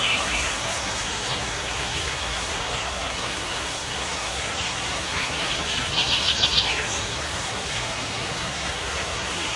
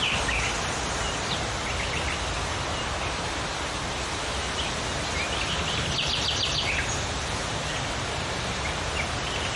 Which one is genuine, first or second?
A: second